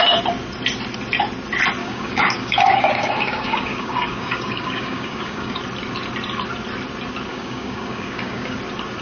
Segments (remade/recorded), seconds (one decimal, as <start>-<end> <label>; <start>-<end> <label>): 0.0-1.8 recorded; 1.8-5.6 remade; 5.6-7.3 recorded; 7.3-8.6 remade; 8.6-9.0 recorded